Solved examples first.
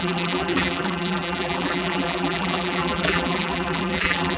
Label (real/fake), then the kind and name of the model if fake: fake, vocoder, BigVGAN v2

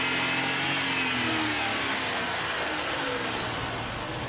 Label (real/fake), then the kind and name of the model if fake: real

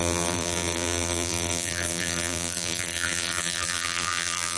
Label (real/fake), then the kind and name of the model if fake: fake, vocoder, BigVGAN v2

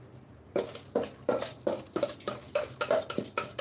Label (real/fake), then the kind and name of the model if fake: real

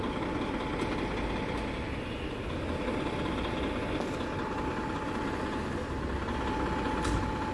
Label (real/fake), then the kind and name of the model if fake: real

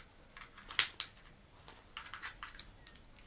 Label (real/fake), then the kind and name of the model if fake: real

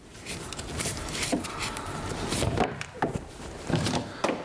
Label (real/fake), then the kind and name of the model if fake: fake, vocoder, BigVGAN v2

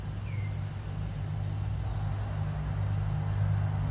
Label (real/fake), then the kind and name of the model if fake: real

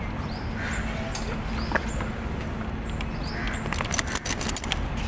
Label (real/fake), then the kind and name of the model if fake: real